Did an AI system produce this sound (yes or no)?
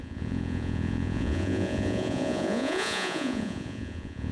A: yes